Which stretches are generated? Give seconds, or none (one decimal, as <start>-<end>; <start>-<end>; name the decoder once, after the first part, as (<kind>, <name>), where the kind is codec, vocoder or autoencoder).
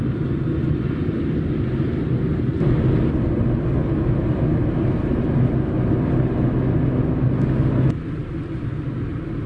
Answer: none